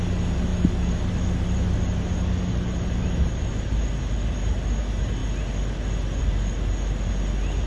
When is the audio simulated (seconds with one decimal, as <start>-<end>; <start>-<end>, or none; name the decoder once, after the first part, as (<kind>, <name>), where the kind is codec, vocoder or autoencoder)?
none